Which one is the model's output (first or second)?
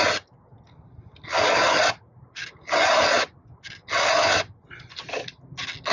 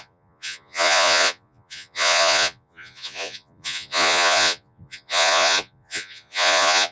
second